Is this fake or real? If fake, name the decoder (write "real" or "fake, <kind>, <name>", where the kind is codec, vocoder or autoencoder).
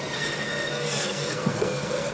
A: fake, codec, SNAC